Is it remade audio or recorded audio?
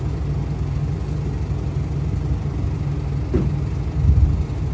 recorded